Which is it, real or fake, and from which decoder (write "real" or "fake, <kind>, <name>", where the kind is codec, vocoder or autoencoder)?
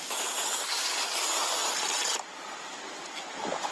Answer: real